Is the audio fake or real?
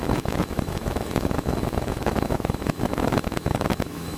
fake